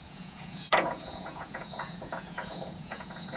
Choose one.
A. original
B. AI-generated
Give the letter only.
B